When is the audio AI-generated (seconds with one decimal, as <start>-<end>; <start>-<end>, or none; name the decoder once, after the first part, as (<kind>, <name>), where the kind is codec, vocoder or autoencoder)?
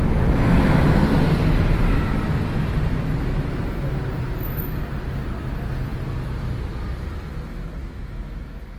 7.8-8.8 (autoencoder, DAC-VAE)